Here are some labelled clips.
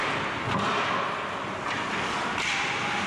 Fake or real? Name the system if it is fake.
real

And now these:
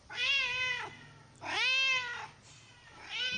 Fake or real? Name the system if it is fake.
real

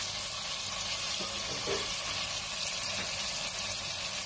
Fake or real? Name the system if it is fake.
real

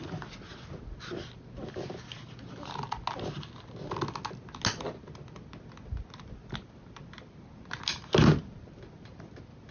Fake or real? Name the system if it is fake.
real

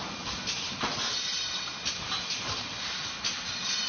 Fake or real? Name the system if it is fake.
real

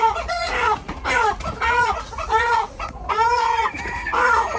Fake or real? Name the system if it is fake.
fake, vocoder, Vocos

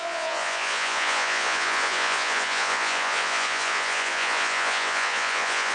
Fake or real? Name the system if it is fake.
fake, vocoder, Vocos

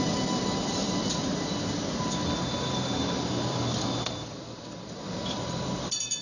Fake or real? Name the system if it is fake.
fake, vocoder, BigVGAN v2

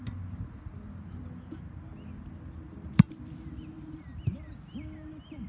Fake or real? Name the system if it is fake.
real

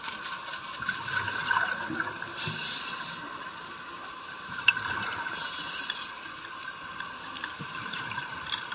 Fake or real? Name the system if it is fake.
fake, vocoder, BigVGAN v2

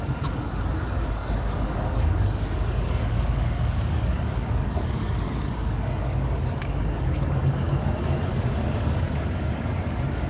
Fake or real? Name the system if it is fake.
fake, codec, DAC